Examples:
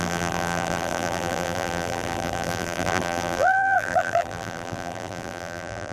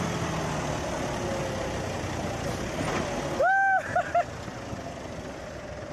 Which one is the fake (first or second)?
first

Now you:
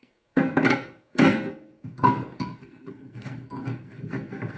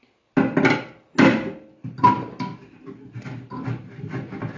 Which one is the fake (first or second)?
first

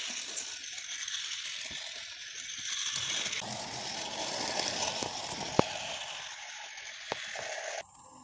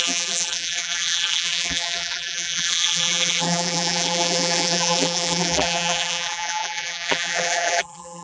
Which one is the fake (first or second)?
second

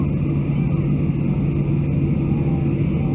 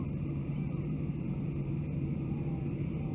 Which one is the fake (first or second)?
second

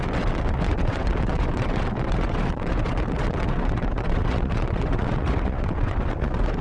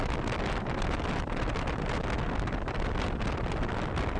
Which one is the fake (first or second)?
first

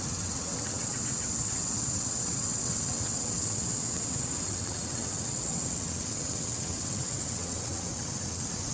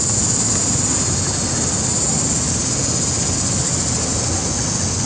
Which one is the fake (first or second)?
first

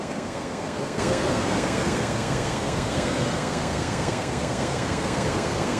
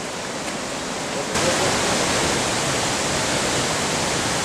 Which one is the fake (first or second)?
first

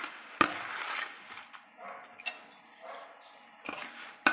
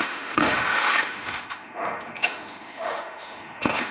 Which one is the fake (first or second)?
second